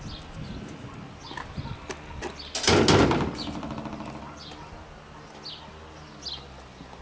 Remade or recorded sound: recorded